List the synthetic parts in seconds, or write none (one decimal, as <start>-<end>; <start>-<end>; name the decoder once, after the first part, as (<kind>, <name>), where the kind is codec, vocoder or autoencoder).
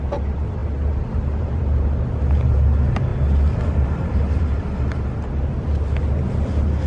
none